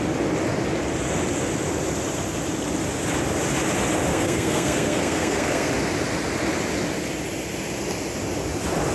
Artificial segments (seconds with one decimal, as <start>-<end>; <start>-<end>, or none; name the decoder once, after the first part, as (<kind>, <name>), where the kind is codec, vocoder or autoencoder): 4.1-5.7 (codec, SNAC)